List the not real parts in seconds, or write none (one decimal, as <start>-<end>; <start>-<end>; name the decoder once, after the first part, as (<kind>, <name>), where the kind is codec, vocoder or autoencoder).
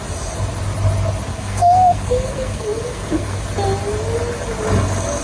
1.3-3.4 (codec, SNAC)